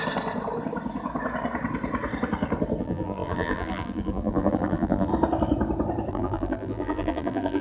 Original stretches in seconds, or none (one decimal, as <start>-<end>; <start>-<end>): 0.0-2.8; 5.1-6.1